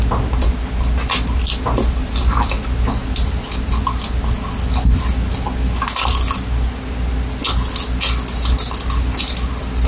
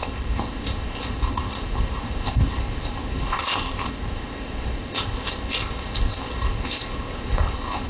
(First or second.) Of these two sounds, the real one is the first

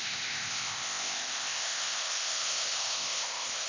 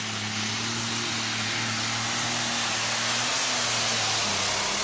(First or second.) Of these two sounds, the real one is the second